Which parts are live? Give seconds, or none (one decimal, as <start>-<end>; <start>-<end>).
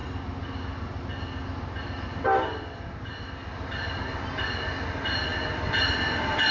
0.0-6.5